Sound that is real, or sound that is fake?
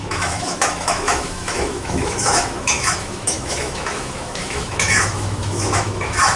fake